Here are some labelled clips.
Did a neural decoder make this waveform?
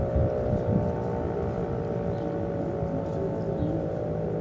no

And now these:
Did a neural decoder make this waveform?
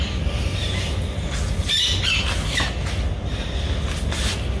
no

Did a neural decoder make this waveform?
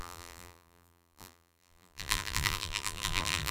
yes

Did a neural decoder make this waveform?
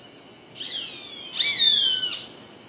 no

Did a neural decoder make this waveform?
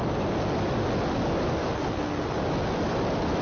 no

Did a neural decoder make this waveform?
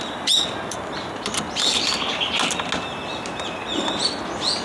no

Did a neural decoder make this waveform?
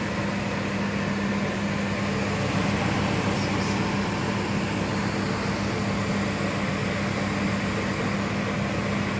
no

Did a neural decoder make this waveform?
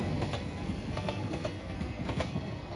yes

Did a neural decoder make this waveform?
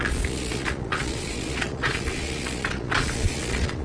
yes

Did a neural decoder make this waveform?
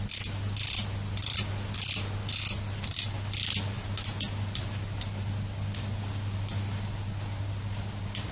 no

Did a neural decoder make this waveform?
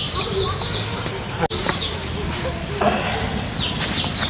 no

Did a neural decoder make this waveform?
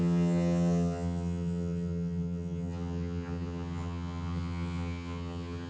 yes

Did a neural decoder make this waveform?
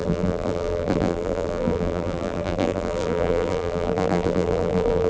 yes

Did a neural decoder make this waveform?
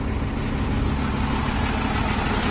no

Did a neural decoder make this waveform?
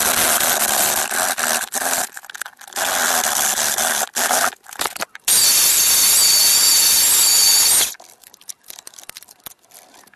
no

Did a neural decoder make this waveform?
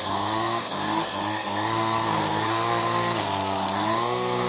yes